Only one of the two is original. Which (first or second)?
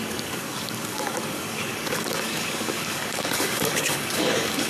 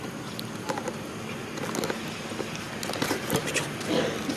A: second